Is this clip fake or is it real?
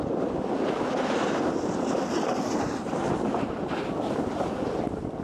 real